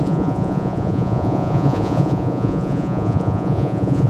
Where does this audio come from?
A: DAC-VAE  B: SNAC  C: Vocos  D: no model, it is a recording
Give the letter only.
C